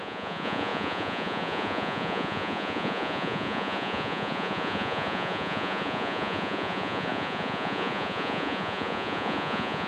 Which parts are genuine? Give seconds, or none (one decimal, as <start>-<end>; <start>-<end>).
none